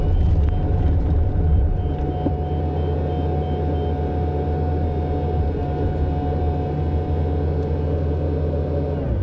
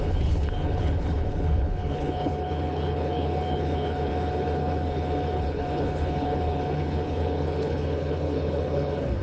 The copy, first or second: second